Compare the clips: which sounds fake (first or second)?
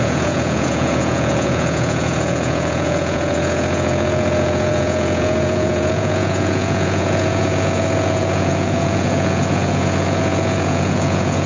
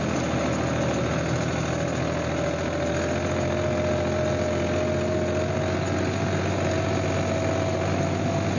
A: first